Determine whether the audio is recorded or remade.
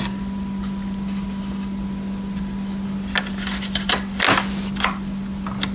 recorded